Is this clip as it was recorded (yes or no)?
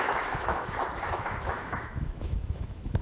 no